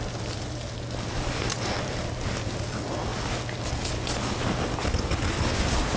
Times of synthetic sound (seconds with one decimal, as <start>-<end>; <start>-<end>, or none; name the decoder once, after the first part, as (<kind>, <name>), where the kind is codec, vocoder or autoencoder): 0.0-3.1 (vocoder, BigVGAN v2); 5.3-6.0

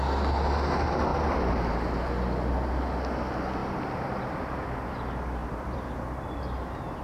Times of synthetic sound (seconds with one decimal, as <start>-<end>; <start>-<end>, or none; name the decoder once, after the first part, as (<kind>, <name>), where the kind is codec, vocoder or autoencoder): 3.6-4.5 (vocoder, BigVGAN v2); 5.4-6.4

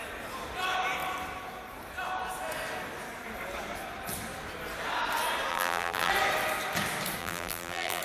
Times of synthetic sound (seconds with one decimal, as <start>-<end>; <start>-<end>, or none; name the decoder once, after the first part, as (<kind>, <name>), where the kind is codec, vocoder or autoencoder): 5.5-6.1 (vocoder, BigVGAN v2); 7.2-8.0

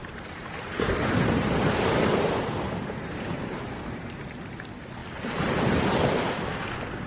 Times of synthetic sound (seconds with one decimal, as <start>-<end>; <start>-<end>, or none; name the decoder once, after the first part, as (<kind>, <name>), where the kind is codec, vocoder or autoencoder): 0.0-4.3 (vocoder, BigVGAN v2)

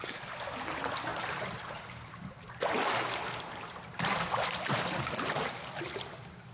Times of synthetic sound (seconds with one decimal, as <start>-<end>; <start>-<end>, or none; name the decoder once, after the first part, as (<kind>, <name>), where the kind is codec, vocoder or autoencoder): 1.1-5.0 (vocoder, BigVGAN v2)

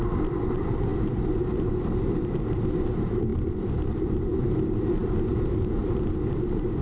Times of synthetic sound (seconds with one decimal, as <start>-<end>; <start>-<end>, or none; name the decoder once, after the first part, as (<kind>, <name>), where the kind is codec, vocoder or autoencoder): 0.0-6.8 (vocoder, BigVGAN v2)

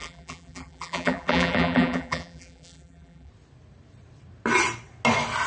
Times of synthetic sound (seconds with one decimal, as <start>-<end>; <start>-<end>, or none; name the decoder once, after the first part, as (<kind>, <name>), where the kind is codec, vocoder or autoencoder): 0.0-3.3 (vocoder, BigVGAN v2)

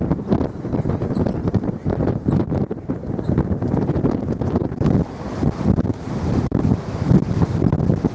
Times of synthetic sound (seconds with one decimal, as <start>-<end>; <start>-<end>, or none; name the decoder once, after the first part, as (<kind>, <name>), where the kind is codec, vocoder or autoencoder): 1.4-6.2 (vocoder, BigVGAN v2)